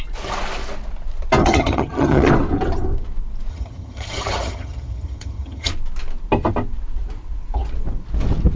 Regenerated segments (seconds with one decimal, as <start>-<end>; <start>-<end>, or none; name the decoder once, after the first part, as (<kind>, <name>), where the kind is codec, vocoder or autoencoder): 1.4-2.3 (vocoder, HiFi-GAN); 3.5-5.7